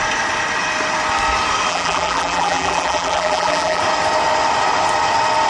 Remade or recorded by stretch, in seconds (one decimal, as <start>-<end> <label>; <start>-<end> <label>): 0.0-1.7 recorded; 1.7-3.8 remade; 3.8-5.5 recorded

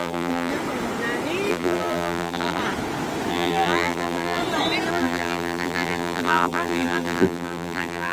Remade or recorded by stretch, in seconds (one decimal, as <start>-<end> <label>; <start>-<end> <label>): 0.0-0.5 remade; 0.5-1.5 recorded; 1.5-2.6 remade; 2.6-3.3 recorded; 3.3-4.4 remade; 4.4-4.9 recorded; 4.9-8.1 remade

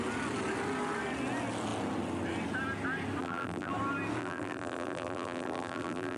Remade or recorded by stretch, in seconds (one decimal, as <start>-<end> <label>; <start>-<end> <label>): 0.0-3.2 recorded; 3.2-3.7 remade; 3.7-4.2 recorded; 4.2-6.2 remade

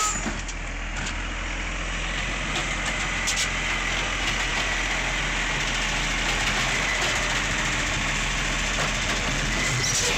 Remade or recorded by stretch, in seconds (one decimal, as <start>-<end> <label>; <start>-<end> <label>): 0.0-10.2 recorded